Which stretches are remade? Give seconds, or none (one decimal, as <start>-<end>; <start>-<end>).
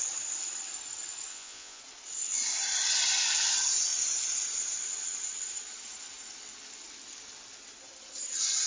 1.3-1.8